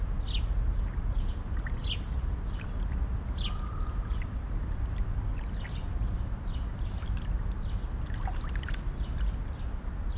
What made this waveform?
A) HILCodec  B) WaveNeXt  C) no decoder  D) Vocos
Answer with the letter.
C